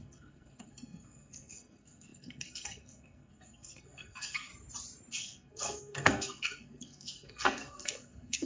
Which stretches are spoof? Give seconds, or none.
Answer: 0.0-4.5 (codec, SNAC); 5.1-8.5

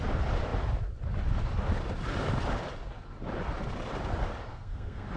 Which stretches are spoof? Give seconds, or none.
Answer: 4.5-5.2 (codec, SNAC)

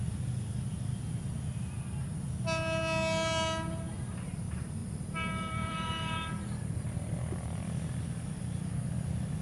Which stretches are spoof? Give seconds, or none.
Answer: 4.8-8.0 (vocoder, BigVGAN v2)

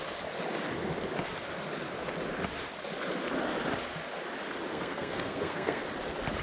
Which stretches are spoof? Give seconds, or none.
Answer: 4.7-5.8 (codec, SNAC)

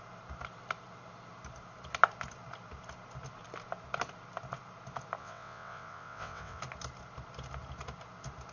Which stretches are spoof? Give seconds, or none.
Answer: 5.2-6.6 (vocoder, WaveNeXt)